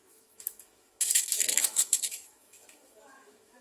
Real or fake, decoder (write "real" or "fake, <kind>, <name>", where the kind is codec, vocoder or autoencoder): fake, autoencoder, DAC-VAE